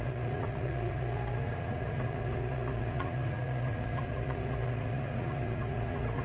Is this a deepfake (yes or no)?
yes